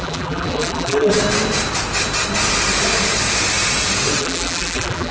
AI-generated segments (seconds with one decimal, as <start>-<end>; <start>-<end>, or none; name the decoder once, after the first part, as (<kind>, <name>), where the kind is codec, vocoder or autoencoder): 0.0-1.1 (vocoder, BigVGAN v2); 4.2-5.1